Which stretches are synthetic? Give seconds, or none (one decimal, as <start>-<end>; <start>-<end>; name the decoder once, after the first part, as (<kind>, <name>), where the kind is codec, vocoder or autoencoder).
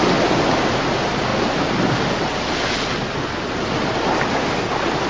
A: none